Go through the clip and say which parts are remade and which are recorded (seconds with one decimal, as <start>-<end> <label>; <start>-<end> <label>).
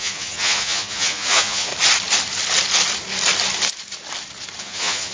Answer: 0.0-1.7 remade; 1.7-4.6 recorded; 4.6-5.1 remade